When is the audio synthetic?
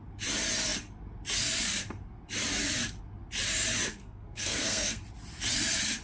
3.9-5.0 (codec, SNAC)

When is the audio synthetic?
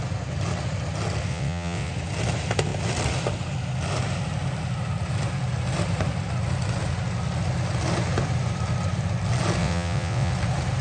1.3-1.9 (vocoder, WaveNeXt); 9.6-10.3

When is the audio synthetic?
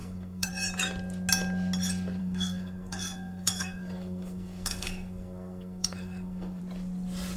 0.0-0.5 (codec, SNAC); 2.2-6.6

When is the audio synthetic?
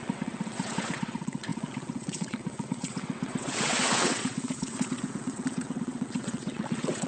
0.0-7.1 (vocoder, WaveNeXt)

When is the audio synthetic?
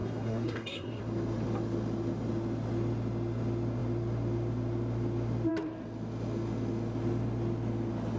0.0-1.0 (codec, SNAC)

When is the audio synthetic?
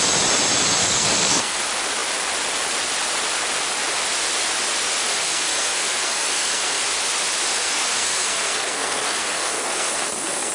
0.8-1.6 (codec, SNAC); 5.0-6.8; 7.5-10.5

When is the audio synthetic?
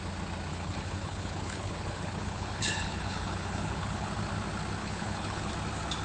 0.5-4.1 (codec, HILCodec); 4.8-5.5